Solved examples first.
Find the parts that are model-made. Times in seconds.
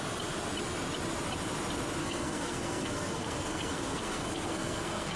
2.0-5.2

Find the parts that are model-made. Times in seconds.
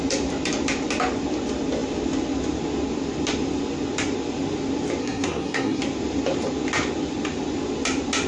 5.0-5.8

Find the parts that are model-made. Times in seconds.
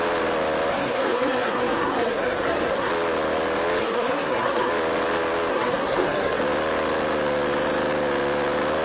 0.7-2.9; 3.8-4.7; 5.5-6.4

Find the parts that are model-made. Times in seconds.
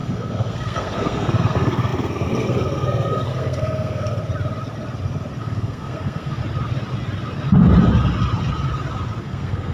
0.0-4.2; 5.4-6.4; 9.2-9.7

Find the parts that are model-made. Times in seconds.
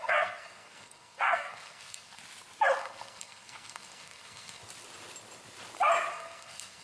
0.0-2.2; 2.8-4.6; 6.1-6.8